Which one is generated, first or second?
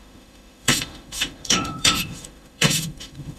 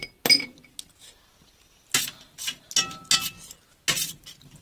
first